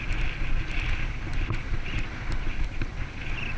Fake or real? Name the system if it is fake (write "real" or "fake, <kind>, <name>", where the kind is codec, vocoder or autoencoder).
real